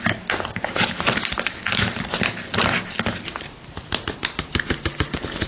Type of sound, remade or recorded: recorded